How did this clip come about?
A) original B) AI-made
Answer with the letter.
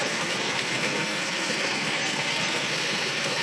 B